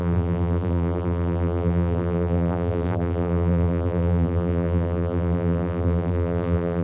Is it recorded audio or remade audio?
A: remade